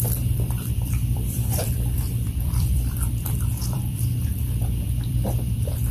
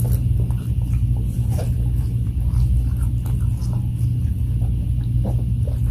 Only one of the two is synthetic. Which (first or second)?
first